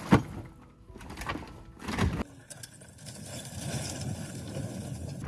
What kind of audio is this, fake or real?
real